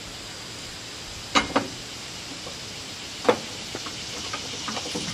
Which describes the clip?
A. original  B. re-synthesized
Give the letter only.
A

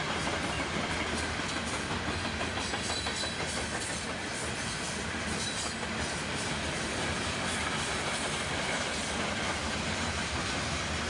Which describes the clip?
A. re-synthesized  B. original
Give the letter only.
A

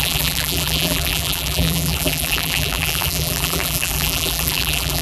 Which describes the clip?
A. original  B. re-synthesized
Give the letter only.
B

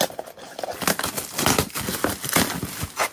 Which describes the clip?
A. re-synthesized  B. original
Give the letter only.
A